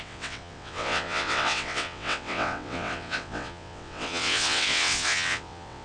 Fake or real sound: fake